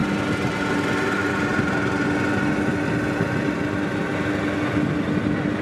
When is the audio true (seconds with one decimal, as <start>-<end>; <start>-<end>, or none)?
0.0-5.6